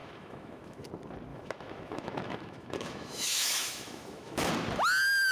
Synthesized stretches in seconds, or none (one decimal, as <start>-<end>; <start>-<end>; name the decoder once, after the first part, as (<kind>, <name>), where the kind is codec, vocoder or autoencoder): 0.0-0.9 (autoencoder, DAC-VAE); 1.3-4.5